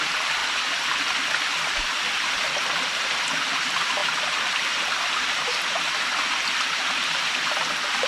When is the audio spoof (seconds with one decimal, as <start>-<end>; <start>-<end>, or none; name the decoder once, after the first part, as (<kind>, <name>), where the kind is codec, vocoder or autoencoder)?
none